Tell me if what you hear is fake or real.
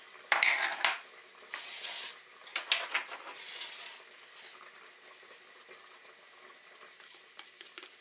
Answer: real